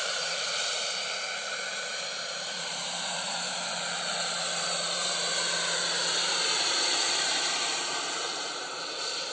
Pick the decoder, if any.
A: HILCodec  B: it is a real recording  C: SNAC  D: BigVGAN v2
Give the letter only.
D